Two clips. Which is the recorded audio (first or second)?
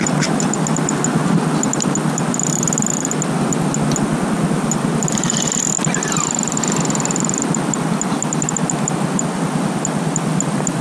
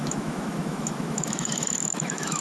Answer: first